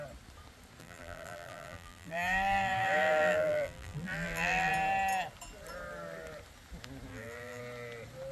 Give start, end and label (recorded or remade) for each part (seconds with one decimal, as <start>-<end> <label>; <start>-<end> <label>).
0.0-0.8 recorded; 0.8-4.7 remade; 4.7-7.1 recorded; 7.1-7.6 remade; 7.6-8.3 recorded